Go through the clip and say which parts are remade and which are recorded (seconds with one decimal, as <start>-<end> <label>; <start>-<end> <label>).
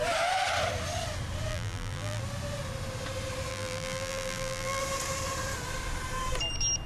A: 0.0-1.5 recorded; 1.5-2.2 remade; 2.2-3.5 recorded; 3.5-4.8 remade; 4.8-6.9 recorded